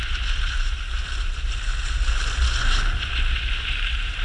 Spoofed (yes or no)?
no